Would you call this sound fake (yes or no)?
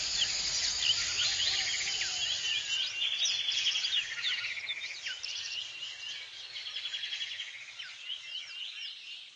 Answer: no